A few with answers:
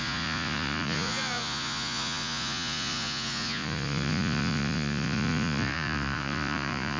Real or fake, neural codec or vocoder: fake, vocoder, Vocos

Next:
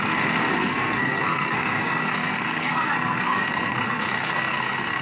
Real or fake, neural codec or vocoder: fake, codec, SNAC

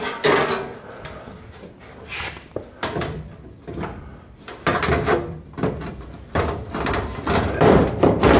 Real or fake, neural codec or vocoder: fake, vocoder, BigVGAN v2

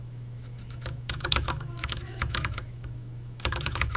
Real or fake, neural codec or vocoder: fake, autoencoder, DAC-VAE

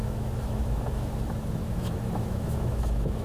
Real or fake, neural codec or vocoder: fake, autoencoder, DAC-VAE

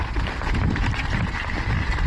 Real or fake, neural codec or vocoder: real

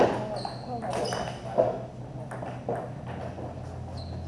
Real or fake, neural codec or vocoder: real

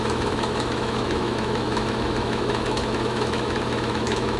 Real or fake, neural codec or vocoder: fake, autoencoder, DAC-VAE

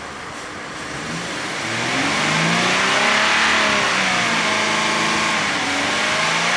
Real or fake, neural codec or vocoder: real